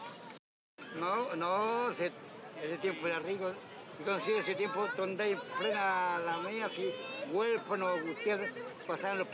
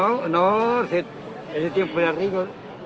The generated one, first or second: second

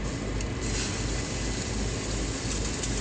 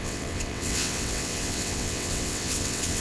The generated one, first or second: second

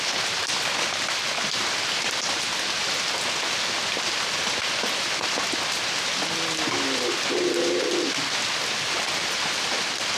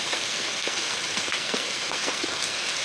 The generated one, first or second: second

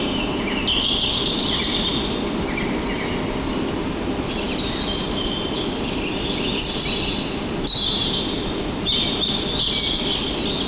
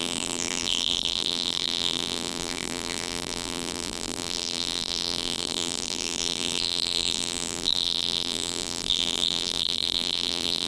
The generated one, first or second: second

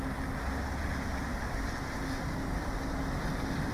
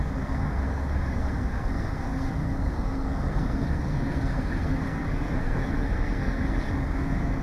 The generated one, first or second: second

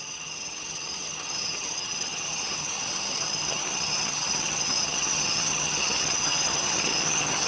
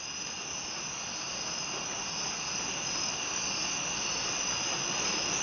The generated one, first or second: first